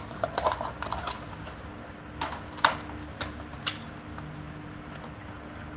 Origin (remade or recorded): recorded